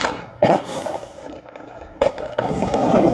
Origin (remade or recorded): remade